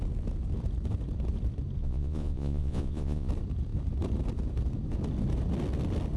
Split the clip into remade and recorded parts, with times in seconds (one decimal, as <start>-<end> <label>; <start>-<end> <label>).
0.0-1.8 recorded; 1.8-3.3 remade; 3.3-6.2 recorded